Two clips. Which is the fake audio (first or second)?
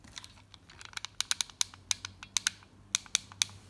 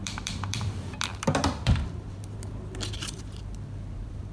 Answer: second